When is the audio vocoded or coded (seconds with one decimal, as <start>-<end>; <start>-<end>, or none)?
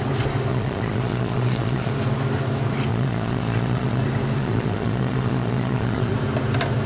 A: 0.5-1.9; 2.9-4.0; 4.4-6.1